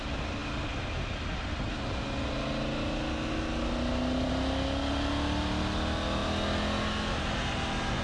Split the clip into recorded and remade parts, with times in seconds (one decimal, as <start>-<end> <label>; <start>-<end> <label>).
0.0-8.0 recorded